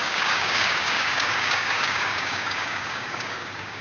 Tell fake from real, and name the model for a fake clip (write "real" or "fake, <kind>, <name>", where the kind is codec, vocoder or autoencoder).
fake, codec, DAC